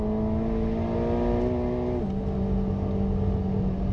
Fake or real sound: real